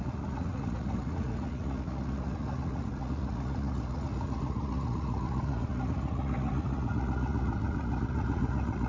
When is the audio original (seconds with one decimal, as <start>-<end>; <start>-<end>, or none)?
none